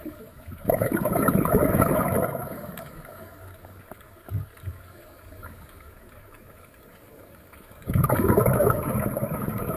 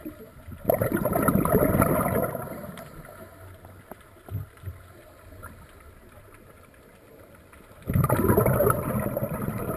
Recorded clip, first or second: second